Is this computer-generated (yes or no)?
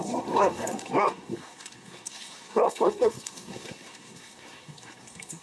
yes